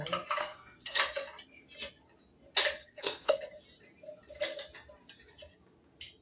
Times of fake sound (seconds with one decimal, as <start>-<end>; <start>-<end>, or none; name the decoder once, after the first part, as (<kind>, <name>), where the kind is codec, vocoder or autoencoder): 0.4-1.0 (codec, SNAC); 2.8-3.4